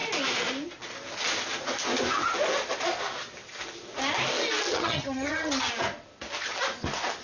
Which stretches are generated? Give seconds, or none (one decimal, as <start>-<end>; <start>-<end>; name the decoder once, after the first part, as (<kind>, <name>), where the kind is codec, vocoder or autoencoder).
4.7-5.7 (vocoder, HiFi-GAN)